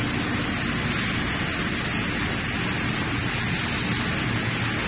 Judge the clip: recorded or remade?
recorded